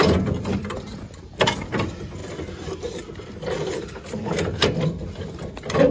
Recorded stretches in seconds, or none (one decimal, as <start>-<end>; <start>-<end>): 0.0-5.9